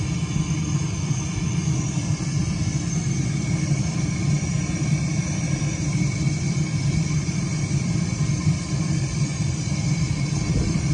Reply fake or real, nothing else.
fake